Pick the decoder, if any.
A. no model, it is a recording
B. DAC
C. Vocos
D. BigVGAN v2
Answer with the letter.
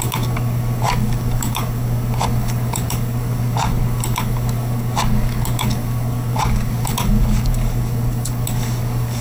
B